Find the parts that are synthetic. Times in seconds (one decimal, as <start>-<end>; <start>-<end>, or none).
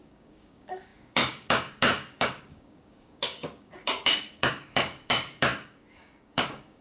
0.0-6.8